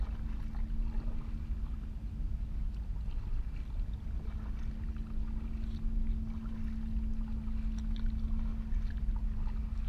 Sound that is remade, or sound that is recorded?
recorded